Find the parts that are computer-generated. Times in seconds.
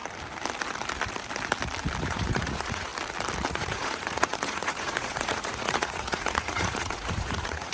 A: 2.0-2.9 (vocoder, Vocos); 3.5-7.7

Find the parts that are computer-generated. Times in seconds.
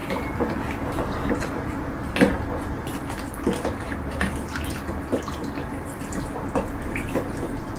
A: 0.0-1.3 (codec, DAC)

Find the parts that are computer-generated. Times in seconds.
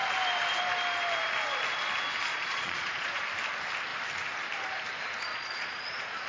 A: 2.3-3.2 (vocoder, Vocos); 5.3-6.3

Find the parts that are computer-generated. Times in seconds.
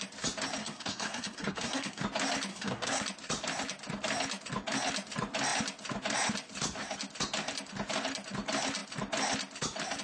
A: 0.6-2.0 (codec, SNAC); 2.5-3.0